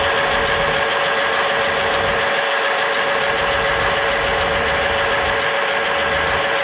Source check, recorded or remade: recorded